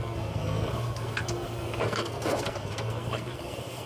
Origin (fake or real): fake